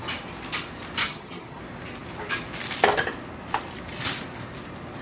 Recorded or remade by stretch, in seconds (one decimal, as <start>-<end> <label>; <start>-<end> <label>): 0.0-1.0 recorded; 1.0-1.6 remade; 1.6-5.0 recorded